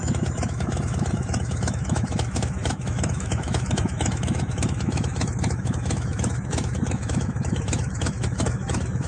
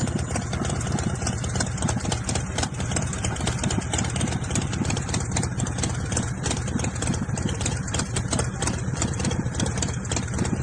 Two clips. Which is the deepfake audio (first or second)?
first